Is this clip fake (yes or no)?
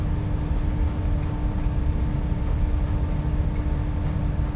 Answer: no